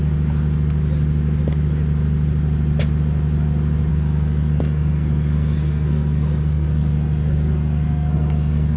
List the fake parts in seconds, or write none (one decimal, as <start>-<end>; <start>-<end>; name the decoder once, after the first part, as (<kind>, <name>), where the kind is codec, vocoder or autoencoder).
3.9-8.8 (codec, SNAC)